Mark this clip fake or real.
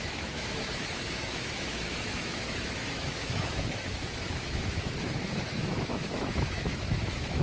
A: fake